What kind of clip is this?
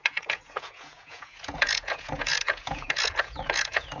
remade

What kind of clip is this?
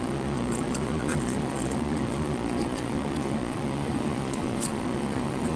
remade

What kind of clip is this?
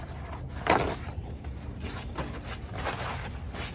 recorded